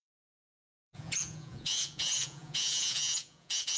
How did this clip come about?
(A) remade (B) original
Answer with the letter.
A